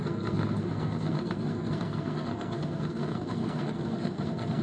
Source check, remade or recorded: remade